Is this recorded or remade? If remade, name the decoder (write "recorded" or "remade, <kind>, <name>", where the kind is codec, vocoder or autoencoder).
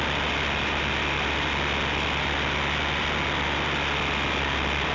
recorded